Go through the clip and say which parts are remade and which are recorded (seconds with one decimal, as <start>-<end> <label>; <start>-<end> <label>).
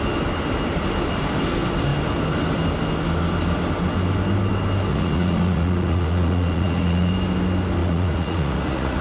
0.0-4.9 recorded; 4.9-7.1 remade; 7.1-7.8 recorded; 7.8-9.0 remade